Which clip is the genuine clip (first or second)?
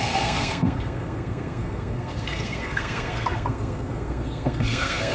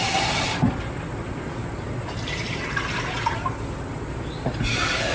second